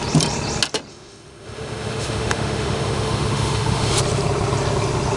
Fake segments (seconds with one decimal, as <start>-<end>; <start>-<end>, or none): 0.9-3.9